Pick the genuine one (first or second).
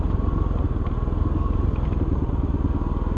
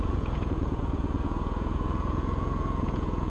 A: first